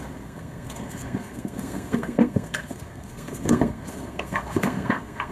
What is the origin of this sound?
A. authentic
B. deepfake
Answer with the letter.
B